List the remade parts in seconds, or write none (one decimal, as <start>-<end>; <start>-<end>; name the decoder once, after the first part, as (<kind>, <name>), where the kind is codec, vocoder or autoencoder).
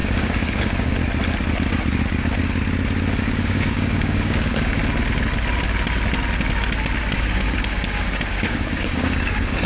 0.0-1.0 (codec, DAC); 3.2-4.8; 7.0-9.7